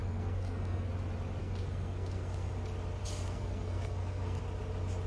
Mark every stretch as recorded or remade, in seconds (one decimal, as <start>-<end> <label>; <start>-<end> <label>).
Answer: 0.0-0.9 remade; 0.9-1.4 recorded; 1.4-2.5 remade; 2.5-3.0 recorded; 3.0-4.4 remade; 4.4-5.1 recorded

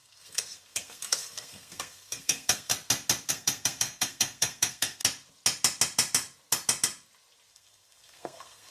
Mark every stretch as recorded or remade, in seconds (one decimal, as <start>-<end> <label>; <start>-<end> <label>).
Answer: 0.0-2.7 remade; 2.7-3.3 recorded; 3.3-5.0 remade; 5.0-7.5 recorded; 7.5-8.7 remade

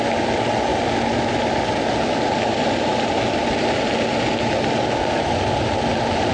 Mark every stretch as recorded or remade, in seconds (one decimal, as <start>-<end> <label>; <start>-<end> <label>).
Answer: 0.0-6.3 recorded

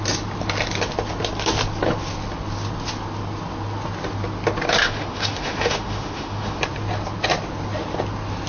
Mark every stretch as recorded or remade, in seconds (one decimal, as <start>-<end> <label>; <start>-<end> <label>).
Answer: 0.0-4.8 recorded; 4.8-6.6 remade; 6.6-8.5 recorded

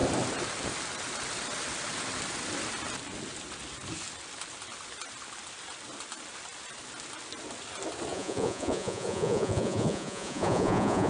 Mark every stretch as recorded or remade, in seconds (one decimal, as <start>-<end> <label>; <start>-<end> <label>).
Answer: 0.0-8.1 recorded; 8.1-11.1 remade

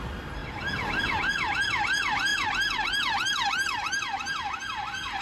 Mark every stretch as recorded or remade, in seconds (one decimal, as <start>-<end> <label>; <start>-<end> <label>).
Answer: 0.0-5.2 recorded

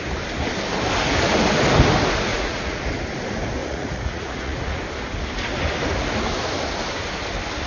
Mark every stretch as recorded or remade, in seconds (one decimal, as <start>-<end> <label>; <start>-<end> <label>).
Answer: 0.0-2.3 recorded; 2.3-2.8 remade; 2.8-3.6 recorded; 3.6-4.8 remade; 4.8-7.7 recorded